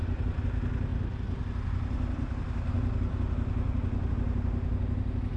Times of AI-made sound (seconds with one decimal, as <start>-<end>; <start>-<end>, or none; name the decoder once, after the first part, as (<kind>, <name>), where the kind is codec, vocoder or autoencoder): none